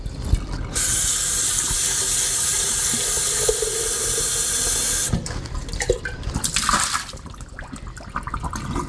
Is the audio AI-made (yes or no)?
no